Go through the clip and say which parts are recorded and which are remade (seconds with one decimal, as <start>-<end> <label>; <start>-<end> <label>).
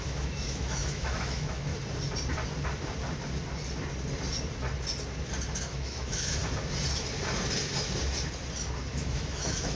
0.0-1.7 remade; 1.7-5.6 recorded; 5.6-6.4 remade; 6.4-8.9 recorded; 8.9-9.7 remade